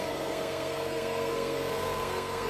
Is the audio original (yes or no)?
no